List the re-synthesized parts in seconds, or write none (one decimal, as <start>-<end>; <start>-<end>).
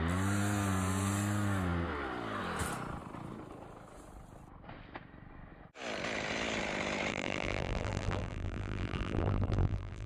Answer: 7.1-10.1